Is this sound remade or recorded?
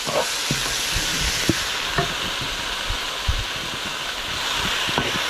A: recorded